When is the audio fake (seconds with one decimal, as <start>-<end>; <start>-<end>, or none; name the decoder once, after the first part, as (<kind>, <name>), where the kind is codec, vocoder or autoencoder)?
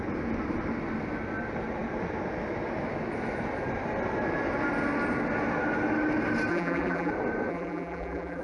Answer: 6.5-7.1 (vocoder, BigVGAN v2); 7.5-8.4